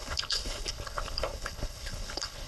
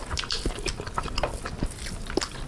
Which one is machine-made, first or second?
first